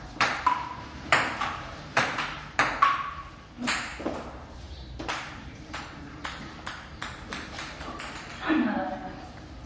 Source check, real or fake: fake